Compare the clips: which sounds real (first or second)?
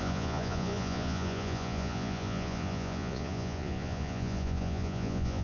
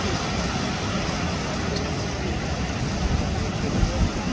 second